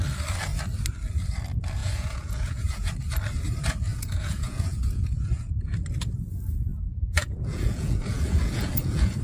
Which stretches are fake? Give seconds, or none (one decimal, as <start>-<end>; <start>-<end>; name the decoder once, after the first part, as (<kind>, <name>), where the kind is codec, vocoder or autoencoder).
1.8-2.9 (vocoder, Vocos); 3.9-5.5; 6.7-9.2